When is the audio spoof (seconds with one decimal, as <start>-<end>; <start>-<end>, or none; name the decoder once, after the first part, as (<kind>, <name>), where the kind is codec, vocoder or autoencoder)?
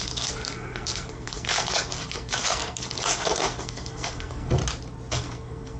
0.0-4.6 (codec, SNAC); 5.1-5.8